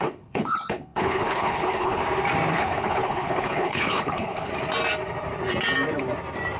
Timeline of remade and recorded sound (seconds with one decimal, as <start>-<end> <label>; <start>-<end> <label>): 0.0-2.0 remade; 2.0-2.5 recorded; 2.5-4.5 remade; 4.5-6.6 recorded